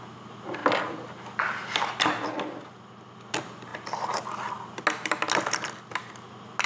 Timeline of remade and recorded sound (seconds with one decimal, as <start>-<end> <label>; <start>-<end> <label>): 0.0-6.7 recorded